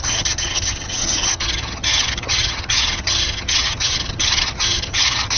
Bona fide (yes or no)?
no